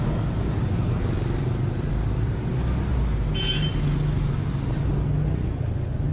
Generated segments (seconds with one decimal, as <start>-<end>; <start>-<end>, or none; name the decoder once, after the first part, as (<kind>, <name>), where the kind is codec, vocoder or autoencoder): none